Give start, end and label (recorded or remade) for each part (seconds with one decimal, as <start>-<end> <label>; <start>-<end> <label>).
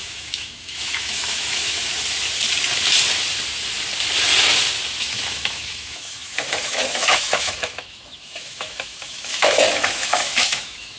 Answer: 0.0-1.9 remade; 1.9-5.0 recorded; 5.0-11.0 remade